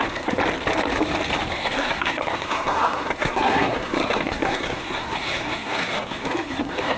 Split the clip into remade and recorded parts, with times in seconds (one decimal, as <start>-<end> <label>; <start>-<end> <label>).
0.0-0.4 remade; 0.4-1.5 recorded; 1.5-7.0 remade